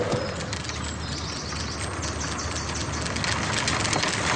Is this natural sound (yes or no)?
yes